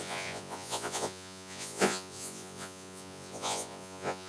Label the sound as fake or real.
fake